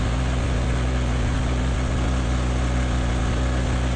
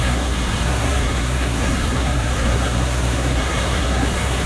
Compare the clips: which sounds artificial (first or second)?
second